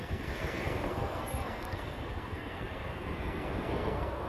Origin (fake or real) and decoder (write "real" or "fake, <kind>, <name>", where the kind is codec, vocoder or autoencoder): fake, codec, SNAC